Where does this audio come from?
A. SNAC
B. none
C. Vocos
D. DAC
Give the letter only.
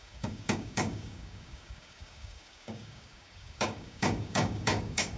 D